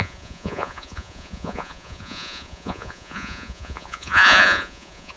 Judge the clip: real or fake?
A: fake